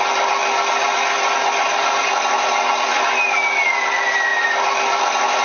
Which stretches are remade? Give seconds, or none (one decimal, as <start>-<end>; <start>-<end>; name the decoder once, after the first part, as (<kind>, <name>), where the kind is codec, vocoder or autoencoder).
none